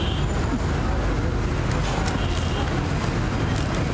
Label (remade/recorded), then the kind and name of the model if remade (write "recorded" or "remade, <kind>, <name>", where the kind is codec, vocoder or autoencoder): recorded